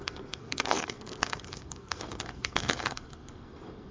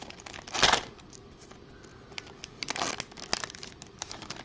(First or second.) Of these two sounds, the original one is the second